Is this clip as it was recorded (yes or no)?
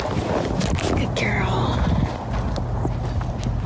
yes